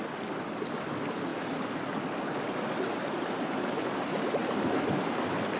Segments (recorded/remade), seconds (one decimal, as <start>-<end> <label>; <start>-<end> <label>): 0.0-5.6 recorded